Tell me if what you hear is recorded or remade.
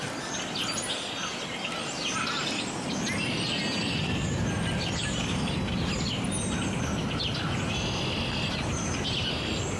recorded